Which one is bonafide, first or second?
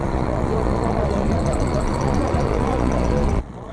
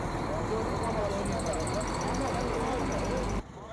second